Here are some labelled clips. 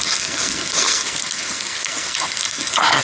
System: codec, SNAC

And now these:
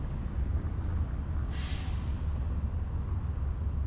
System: none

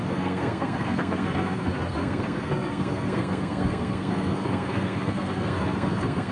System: codec, SNAC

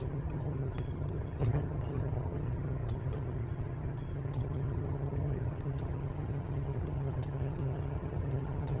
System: vocoder, HiFi-GAN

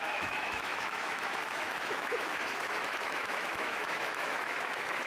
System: autoencoder, DAC-VAE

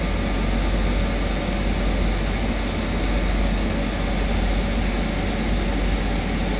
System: none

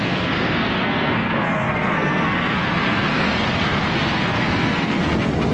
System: codec, SNAC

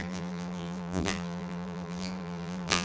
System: vocoder, BigVGAN v2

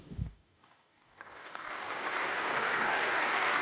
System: codec, DAC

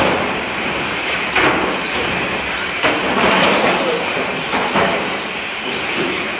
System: vocoder, BigVGAN v2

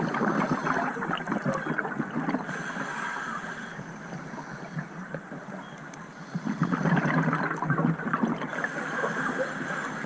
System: none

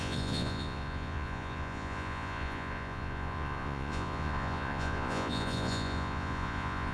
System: vocoder, Vocos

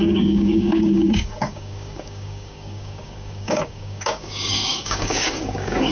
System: codec, DAC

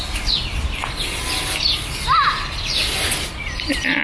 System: none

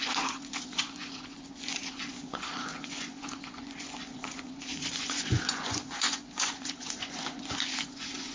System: vocoder, Vocos